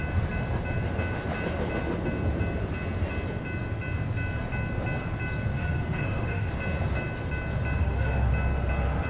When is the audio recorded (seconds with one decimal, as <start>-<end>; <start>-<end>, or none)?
0.0-5.5; 6.5-7.8; 8.3-9.1